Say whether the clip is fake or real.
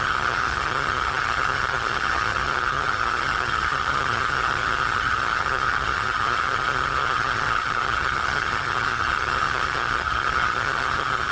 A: fake